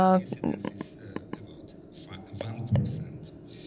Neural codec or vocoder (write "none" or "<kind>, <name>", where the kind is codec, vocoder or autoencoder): none